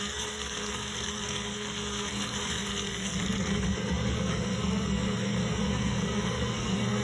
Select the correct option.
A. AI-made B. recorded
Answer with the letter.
A